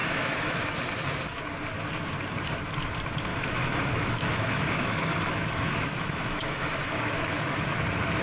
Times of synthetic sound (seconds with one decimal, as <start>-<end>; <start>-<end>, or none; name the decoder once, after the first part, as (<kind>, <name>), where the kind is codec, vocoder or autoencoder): 0.0-0.6 (autoencoder, DAC-VAE); 3.3-7.7